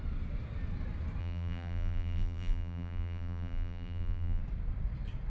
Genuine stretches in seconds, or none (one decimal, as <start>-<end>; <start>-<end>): 0.0-1.2; 4.4-5.3